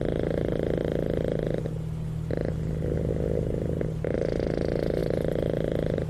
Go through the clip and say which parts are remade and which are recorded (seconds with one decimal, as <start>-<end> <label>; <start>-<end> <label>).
0.0-6.1 recorded